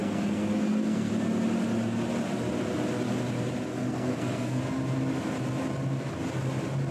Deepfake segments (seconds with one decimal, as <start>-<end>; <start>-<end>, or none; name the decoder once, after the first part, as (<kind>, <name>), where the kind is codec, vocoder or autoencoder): 0.0-1.1 (codec, SNAC); 3.7-4.6